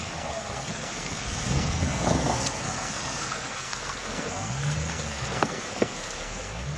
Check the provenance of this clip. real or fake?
fake